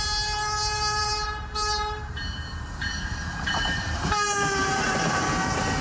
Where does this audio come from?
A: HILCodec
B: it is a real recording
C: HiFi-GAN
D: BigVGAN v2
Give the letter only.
D